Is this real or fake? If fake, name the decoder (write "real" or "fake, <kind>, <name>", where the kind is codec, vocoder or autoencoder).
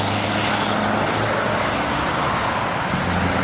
real